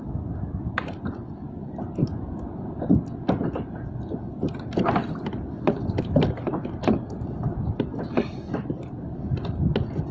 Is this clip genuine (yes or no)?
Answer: yes